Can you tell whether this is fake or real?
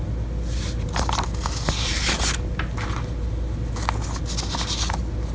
real